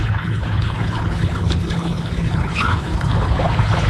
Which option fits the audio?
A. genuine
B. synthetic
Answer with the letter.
B